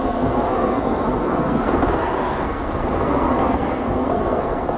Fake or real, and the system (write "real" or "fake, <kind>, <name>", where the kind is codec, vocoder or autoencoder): fake, codec, SNAC